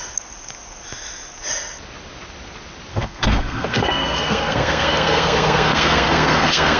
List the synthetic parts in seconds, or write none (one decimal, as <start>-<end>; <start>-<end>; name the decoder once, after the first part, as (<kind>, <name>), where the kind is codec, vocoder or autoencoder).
2.9-6.8 (codec, SNAC)